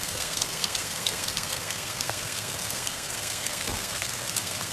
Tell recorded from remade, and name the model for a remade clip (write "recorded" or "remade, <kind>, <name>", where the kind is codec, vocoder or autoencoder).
remade, codec, SNAC